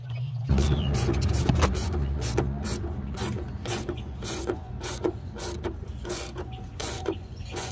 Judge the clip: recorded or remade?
remade